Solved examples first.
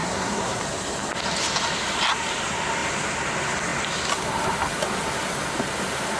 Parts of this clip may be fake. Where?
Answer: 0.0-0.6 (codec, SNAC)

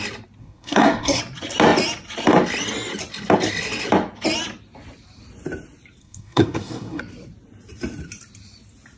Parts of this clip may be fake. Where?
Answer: 0.4-1.2 (codec, SNAC); 6.0-7.0